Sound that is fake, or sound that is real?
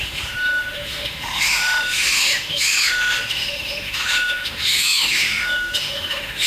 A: fake